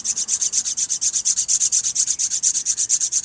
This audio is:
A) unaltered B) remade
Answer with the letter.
A